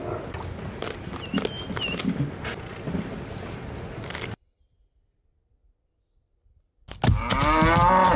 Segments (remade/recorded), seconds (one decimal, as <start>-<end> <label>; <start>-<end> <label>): 0.0-8.2 recorded